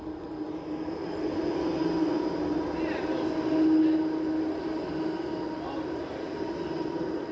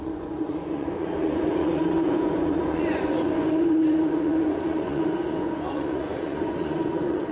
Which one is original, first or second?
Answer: first